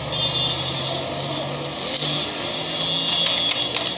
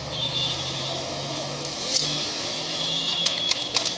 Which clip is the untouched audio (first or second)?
first